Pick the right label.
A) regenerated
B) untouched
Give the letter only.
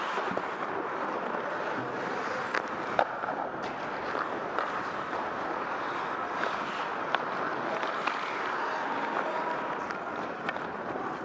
B